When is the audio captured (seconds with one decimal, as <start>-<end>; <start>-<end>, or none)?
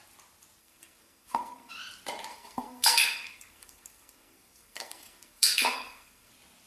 0.0-0.6; 1.7-2.3; 6.3-6.7